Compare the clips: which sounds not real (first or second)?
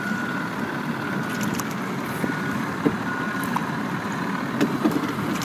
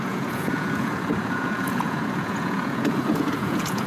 second